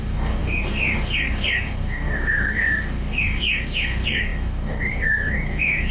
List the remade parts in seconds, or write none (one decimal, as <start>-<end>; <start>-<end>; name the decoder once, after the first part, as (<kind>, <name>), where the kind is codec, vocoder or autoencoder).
0.0-5.9 (codec, DAC)